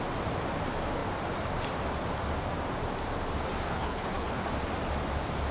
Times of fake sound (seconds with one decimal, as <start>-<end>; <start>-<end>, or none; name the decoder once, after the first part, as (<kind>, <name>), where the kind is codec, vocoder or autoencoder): 3.7-4.5 (codec, HILCodec)